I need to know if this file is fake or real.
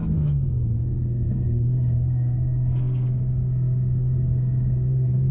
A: fake